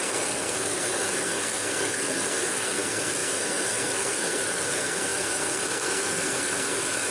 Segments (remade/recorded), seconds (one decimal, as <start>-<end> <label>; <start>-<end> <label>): 0.0-7.1 remade